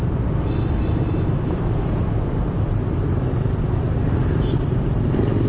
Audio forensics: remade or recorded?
recorded